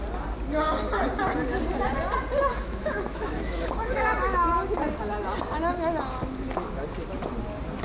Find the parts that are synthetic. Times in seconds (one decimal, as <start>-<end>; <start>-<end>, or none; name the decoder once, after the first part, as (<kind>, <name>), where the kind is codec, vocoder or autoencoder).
2.5-4.5 (autoencoder, DAC-VAE)